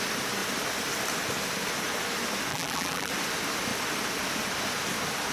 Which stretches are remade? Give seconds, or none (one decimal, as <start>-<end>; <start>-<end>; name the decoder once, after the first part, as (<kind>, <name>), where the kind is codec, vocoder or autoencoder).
2.5-3.1 (vocoder, BigVGAN v2)